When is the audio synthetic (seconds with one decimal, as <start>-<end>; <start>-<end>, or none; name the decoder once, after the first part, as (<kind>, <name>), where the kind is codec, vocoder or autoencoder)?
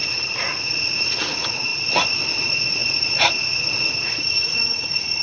0.0-1.7 (vocoder, Vocos); 2.4-5.2